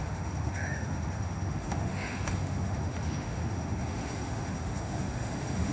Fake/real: fake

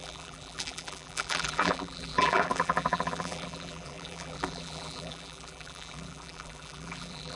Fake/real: fake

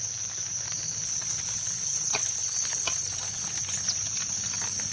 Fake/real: real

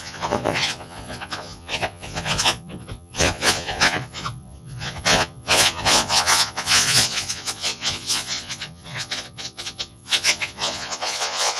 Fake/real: fake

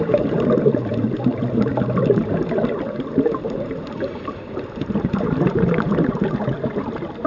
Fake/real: fake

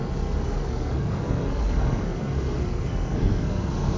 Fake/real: fake